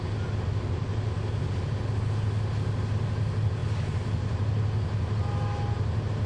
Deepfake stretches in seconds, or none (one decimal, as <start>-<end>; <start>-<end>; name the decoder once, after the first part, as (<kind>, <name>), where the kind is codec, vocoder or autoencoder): none